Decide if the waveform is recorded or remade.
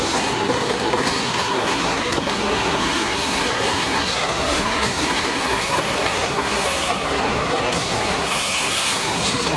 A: remade